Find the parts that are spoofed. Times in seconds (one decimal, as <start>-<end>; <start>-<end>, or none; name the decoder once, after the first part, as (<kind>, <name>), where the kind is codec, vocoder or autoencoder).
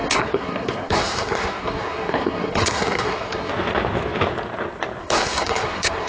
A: 0.0-3.5 (codec, SNAC); 5.0-6.1